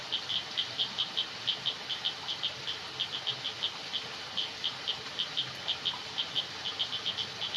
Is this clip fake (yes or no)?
no